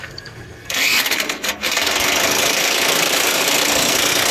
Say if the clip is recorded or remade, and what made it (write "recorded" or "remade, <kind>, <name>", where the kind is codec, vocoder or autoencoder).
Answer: remade, codec, SNAC